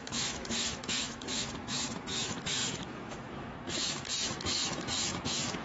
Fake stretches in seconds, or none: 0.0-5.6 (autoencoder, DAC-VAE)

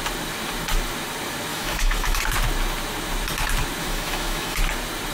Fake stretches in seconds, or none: 1.5-2.2 (autoencoder, DAC-VAE); 3.8-4.6

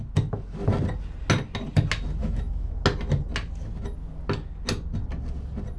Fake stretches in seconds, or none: 2.2-2.7 (autoencoder, DAC-VAE)

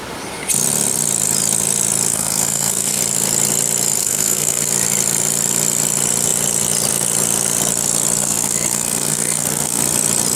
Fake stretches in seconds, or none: 2.1-3.0 (codec, SNAC); 4.0-4.7; 8.2-9.8

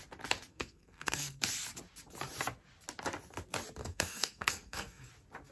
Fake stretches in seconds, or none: 0.5-1.4 (codec, SNAC); 3.8-5.1